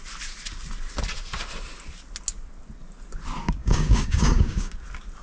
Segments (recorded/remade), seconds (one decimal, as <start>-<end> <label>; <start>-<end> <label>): 0.0-3.6 recorded; 3.6-4.7 remade; 4.7-5.2 recorded